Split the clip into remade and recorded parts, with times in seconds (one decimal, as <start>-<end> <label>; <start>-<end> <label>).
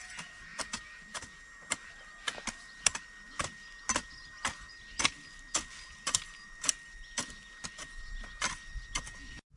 0.0-9.6 recorded